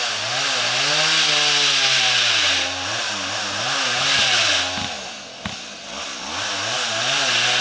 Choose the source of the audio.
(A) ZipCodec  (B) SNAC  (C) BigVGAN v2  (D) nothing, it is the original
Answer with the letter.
D